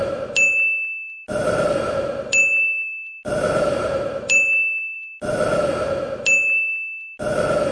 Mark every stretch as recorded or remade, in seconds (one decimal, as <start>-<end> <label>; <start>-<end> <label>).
0.0-6.7 remade; 6.7-7.7 recorded